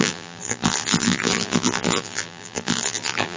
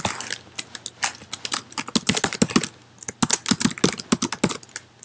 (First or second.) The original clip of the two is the second